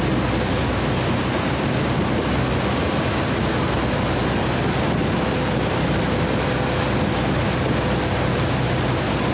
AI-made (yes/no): no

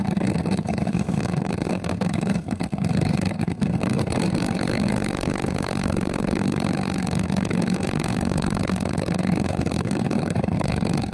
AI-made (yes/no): yes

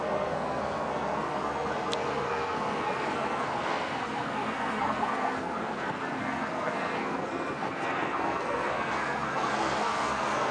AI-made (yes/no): yes